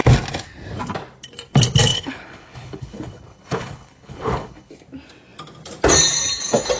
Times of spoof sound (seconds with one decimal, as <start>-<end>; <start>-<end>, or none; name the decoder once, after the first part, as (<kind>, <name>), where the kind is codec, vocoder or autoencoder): 1.9-4.7 (codec, HILCodec)